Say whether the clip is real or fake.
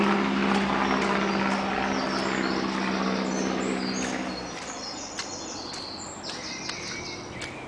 real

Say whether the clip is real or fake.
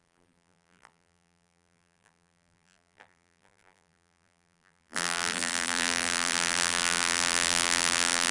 fake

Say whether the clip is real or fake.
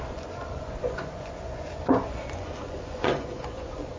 fake